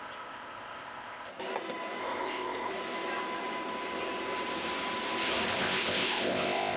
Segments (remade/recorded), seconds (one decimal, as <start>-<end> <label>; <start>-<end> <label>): 0.0-1.3 remade; 1.3-2.0 recorded; 2.0-2.7 remade; 2.7-5.6 recorded; 5.6-6.8 remade